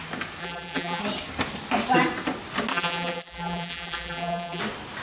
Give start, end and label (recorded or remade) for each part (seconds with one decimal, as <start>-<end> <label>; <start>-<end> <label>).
0.0-0.4 recorded; 0.4-1.0 remade; 1.0-2.7 recorded; 2.7-4.6 remade; 4.6-5.0 recorded